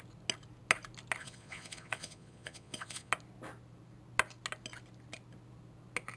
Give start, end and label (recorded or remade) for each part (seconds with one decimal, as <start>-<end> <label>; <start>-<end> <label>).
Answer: 0.0-1.2 recorded; 1.2-3.1 remade; 3.1-6.2 recorded